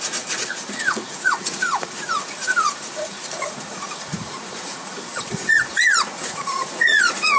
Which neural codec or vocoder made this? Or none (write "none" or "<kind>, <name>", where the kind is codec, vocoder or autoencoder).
vocoder, Vocos